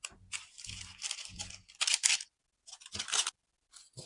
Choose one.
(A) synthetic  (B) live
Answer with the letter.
B